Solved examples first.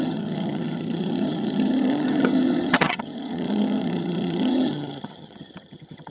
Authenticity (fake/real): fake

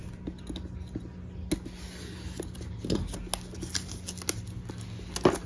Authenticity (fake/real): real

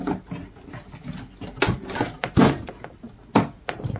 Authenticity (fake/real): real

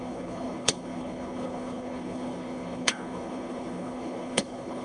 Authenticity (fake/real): fake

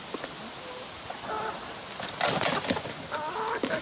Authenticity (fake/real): real